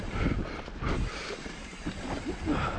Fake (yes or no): no